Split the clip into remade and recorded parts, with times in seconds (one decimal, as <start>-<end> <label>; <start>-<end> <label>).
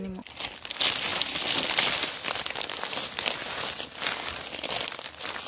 0.0-1.1 recorded; 1.1-3.2 remade; 3.2-5.5 recorded